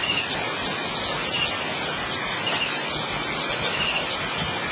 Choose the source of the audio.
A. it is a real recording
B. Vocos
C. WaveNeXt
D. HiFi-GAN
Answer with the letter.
A